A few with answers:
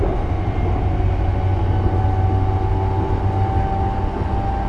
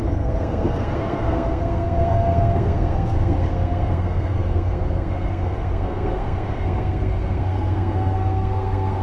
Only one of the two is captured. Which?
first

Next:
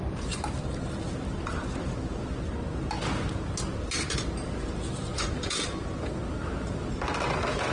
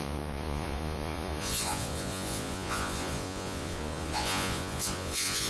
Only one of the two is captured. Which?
first